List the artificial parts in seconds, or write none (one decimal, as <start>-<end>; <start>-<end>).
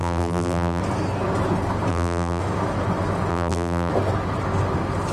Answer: 0.0-0.8; 1.9-2.4; 3.3-3.9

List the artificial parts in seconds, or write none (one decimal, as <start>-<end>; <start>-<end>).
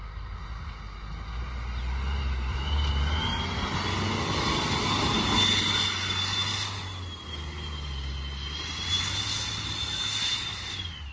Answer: none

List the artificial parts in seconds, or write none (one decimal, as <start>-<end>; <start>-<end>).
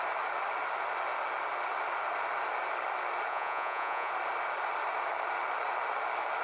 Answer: 3.3-4.1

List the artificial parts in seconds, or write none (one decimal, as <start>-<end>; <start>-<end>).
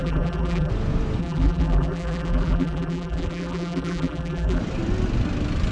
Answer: 0.0-0.7; 1.2-4.6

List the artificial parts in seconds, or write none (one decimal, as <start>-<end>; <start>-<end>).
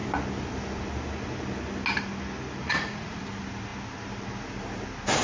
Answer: 2.6-3.2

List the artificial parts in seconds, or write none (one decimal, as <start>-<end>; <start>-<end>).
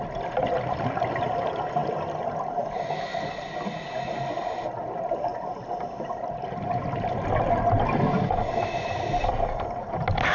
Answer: none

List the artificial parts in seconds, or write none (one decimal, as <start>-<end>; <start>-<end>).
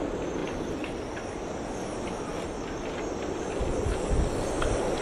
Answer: none